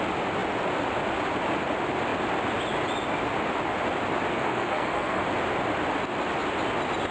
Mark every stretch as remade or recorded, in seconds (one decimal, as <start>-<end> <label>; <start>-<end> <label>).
0.0-4.3 recorded; 4.3-5.2 remade; 5.2-7.1 recorded